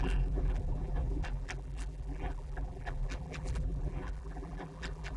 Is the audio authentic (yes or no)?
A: no